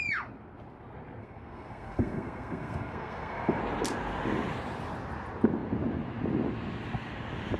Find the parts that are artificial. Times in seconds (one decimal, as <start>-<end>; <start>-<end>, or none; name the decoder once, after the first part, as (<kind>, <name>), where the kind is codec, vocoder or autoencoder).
1.2-3.6 (codec, SNAC)

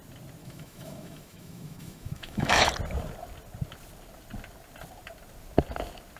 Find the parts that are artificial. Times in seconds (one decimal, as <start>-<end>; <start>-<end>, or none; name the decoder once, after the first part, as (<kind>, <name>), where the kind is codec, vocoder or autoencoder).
0.4-2.7 (autoencoder, DAC-VAE)

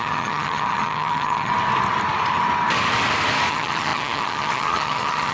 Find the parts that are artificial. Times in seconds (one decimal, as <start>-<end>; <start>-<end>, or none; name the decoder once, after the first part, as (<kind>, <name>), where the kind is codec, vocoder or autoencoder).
0.0-1.5 (vocoder, HiFi-GAN); 3.5-5.3

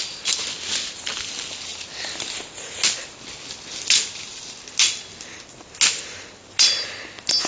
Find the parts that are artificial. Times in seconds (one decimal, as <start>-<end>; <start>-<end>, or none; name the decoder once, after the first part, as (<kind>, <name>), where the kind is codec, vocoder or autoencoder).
none

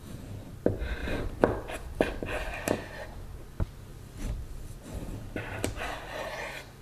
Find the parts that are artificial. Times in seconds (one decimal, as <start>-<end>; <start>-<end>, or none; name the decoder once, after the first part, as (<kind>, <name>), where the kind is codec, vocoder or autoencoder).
1.0-2.7 (vocoder, BigVGAN v2); 3.9-5.7